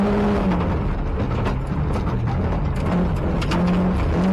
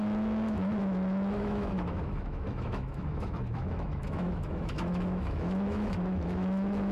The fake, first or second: second